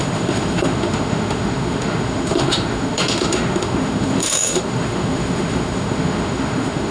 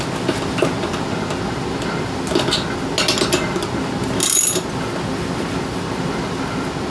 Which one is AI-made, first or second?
first